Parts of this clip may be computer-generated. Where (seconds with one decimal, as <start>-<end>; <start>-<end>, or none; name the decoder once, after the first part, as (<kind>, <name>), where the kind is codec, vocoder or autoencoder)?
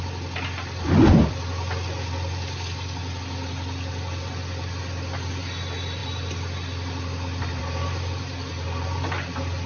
none